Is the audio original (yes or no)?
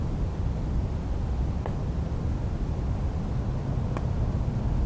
yes